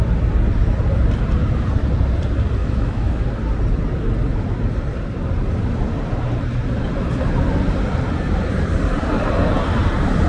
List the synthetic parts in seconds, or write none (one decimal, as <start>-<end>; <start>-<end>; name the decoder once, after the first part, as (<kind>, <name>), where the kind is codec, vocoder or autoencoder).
2.6-3.1 (autoencoder, DAC-VAE)